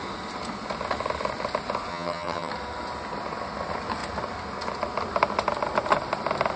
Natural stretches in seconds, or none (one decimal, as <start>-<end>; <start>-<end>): 0.0-1.9; 2.5-6.6